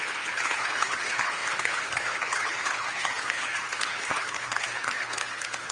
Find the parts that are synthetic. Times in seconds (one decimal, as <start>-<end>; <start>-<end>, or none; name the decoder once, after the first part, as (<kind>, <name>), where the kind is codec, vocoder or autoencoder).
0.0-5.7 (codec, HILCodec)